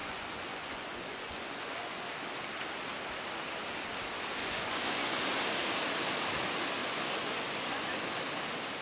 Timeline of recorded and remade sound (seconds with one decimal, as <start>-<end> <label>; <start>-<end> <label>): 0.0-2.1 remade; 2.1-4.4 recorded; 4.4-5.2 remade; 5.2-6.8 recorded; 6.8-8.2 remade; 8.2-8.8 recorded